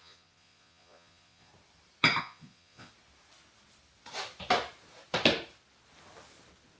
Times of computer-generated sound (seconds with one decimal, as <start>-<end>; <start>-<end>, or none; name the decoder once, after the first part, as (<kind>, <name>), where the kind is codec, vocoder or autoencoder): 0.0-1.5 (vocoder, Vocos); 2.2-2.9